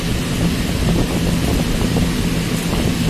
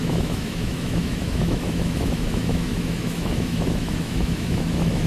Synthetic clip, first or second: second